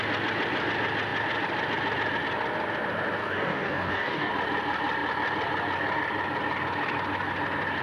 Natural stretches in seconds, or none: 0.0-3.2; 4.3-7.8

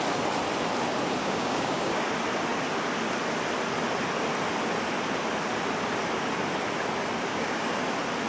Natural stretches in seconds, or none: 0.0-1.2; 2.1-7.3; 7.8-8.3

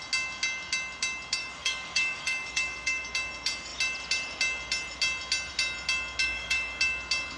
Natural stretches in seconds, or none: 0.0-1.4; 3.0-6.2; 6.8-7.4

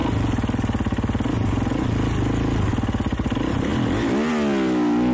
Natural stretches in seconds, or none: 0.0-5.1

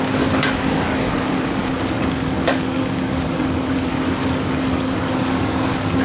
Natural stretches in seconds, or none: none

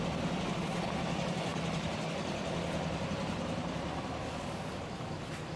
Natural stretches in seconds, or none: 0.0-4.2; 4.8-5.6

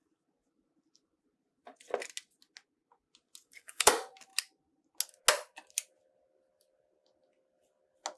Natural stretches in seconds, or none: 0.0-3.4; 3.9-8.2